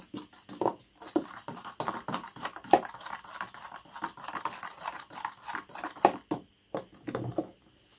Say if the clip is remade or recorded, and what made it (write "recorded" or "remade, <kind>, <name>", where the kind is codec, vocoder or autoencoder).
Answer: recorded